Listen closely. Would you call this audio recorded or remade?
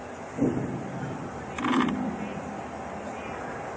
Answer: recorded